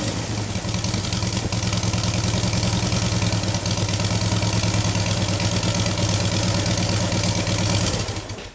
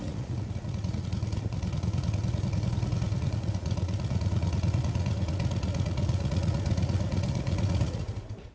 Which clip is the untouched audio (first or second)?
first